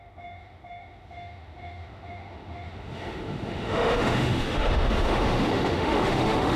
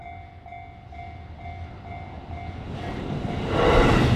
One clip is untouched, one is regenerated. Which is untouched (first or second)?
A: second